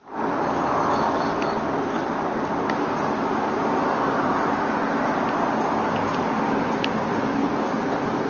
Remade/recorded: recorded